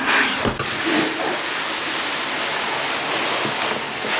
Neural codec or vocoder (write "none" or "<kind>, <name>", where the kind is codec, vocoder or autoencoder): none